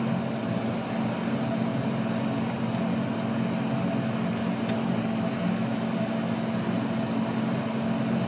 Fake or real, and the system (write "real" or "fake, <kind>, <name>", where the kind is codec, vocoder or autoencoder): real